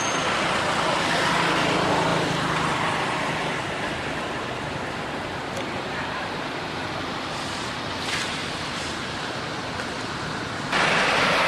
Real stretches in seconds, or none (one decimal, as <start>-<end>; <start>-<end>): 0.0-8.4; 9.2-11.5